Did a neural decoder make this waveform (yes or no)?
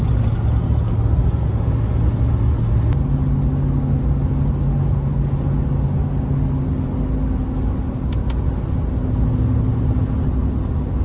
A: no